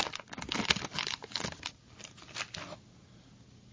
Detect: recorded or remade recorded